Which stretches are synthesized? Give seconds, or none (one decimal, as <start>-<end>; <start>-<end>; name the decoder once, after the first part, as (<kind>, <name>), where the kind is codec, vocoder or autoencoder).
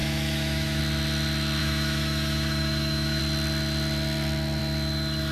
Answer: 0.0-0.8 (autoencoder, DAC-VAE); 1.6-3.2